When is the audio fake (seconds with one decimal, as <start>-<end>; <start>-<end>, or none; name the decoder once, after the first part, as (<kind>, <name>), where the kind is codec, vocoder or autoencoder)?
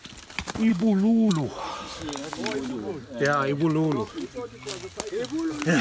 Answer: 0.7-1.3 (autoencoder, DAC-VAE)